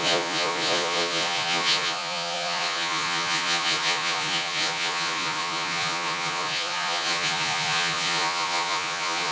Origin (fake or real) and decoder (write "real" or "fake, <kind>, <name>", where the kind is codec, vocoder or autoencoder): fake, vocoder, Vocos